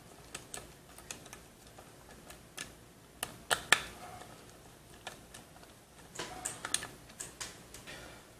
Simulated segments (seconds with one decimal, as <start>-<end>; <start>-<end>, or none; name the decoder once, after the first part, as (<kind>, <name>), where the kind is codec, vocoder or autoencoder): 1.2-2.1 (vocoder, BigVGAN v2); 4.1-6.7